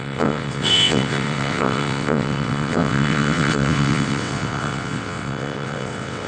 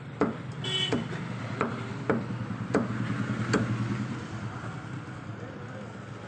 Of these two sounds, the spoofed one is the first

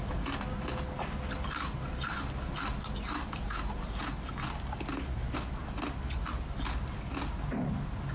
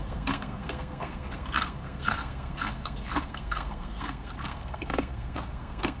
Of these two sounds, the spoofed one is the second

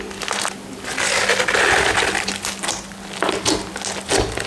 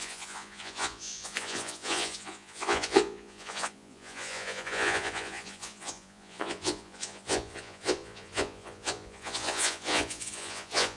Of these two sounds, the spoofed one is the second